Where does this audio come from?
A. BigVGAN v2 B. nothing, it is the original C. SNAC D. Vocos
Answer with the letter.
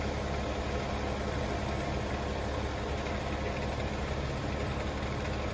B